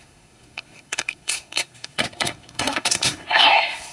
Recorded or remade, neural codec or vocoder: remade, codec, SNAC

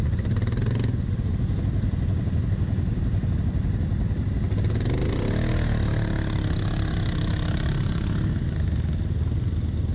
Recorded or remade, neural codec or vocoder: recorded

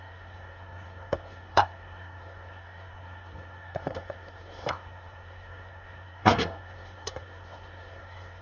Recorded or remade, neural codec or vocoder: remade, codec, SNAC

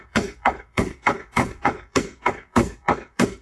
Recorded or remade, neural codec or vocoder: remade, codec, SNAC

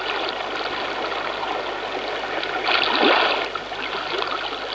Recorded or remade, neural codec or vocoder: recorded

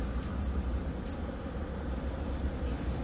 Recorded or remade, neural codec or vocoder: recorded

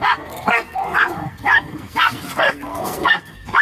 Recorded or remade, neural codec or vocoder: remade, codec, SNAC